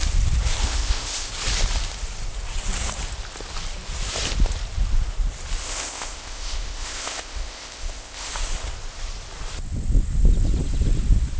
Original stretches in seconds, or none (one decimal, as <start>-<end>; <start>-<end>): 0.0-0.6; 1.3-5.6; 8.3-11.4